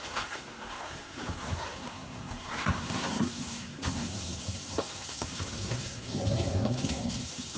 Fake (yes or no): yes